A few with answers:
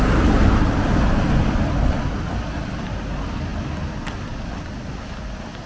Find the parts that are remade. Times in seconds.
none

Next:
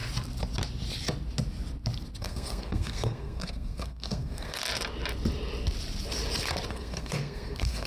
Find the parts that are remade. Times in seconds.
2.2-4.6 (codec, SNAC); 6.7-7.9

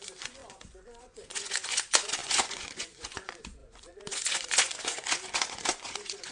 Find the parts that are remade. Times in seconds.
0.0-6.3 (vocoder, Vocos)

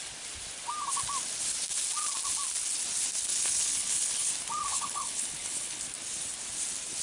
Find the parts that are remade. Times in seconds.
3.3-4.3 (codec, HILCodec); 4.7-5.8

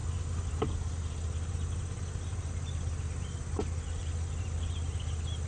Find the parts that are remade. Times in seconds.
none

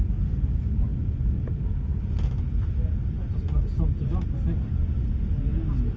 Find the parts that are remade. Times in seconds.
none

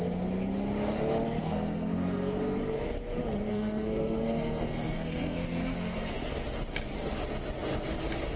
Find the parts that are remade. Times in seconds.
1.4-2.6 (codec, SNAC); 3.5-6.1

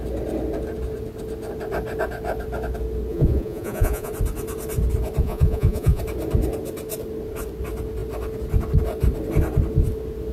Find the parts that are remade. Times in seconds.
3.1-4.1 (vocoder, Vocos); 5.2-6.0